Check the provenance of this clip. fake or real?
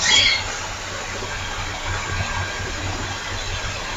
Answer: real